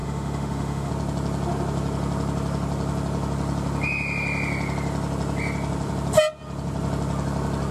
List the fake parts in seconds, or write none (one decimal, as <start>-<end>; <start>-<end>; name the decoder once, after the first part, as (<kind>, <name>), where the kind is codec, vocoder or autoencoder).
0.0-0.9 (autoencoder, DAC-VAE)